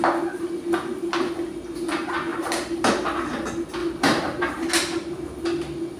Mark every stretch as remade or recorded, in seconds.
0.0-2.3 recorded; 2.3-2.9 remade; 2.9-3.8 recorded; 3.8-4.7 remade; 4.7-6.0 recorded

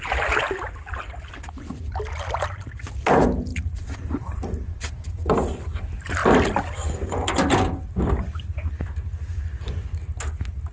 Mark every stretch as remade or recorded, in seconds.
0.0-3.5 recorded; 3.5-5.1 remade; 5.1-10.7 recorded

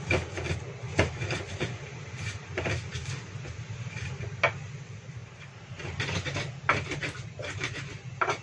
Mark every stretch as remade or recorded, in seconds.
0.0-0.9 recorded; 0.9-4.2 remade; 4.2-5.2 recorded; 5.2-6.4 remade; 6.4-8.4 recorded